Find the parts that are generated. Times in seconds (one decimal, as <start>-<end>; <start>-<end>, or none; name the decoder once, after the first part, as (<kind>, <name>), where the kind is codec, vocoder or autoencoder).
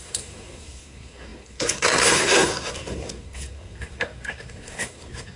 0.0-5.4 (codec, SNAC)